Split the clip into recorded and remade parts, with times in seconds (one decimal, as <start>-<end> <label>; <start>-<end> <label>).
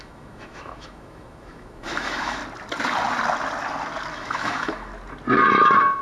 0.0-2.4 remade; 2.4-4.1 recorded; 4.1-4.9 remade; 4.9-5.5 recorded; 5.5-6.0 remade